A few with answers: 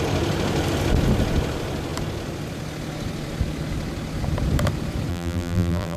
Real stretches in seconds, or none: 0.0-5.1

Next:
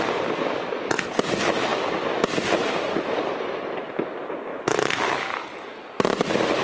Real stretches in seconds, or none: 0.0-4.5; 5.1-6.6

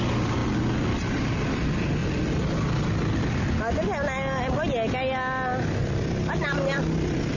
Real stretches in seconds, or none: 0.4-0.9; 2.0-6.4